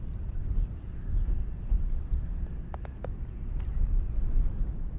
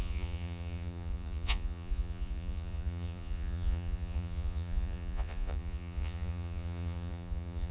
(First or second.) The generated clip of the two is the second